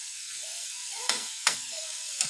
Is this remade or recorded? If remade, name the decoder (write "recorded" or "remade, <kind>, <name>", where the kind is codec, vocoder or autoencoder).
remade, codec, SNAC